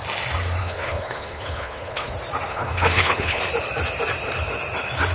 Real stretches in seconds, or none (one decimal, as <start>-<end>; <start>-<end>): 0.0-0.6; 2.1-2.5; 3.4-5.1